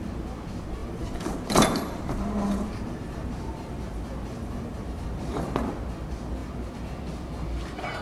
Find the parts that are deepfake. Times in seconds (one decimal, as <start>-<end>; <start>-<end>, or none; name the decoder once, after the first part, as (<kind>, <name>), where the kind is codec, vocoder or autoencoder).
0.8-5.4 (vocoder, BigVGAN v2)